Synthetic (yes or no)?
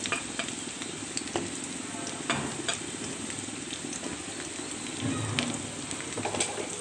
no